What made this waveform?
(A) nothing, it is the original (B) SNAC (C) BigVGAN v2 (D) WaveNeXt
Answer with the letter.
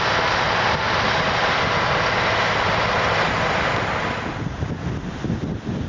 A